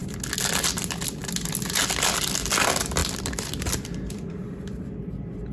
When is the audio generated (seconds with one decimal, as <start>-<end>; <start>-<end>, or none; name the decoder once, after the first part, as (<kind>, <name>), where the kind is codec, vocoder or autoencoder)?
0.6-1.2 (vocoder, BigVGAN v2); 2.0-5.5